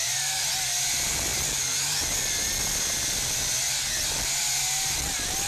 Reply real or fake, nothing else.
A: real